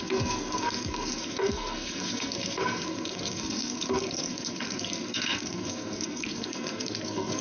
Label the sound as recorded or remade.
remade